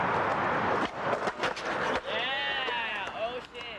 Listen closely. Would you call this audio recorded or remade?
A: recorded